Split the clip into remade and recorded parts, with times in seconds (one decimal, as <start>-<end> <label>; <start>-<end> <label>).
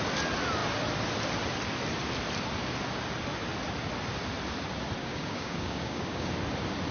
0.0-5.0 recorded; 5.0-6.3 remade; 6.3-6.9 recorded